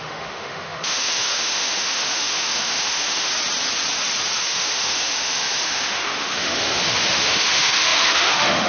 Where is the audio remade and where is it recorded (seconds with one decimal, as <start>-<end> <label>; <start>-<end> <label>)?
0.0-3.3 remade; 3.3-4.4 recorded; 4.4-8.7 remade